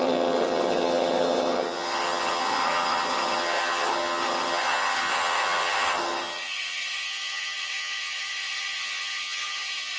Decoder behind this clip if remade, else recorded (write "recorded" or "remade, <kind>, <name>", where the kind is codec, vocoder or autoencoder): remade, vocoder, HiFi-GAN